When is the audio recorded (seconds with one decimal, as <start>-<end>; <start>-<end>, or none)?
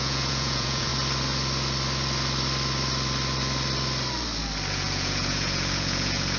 0.9-4.7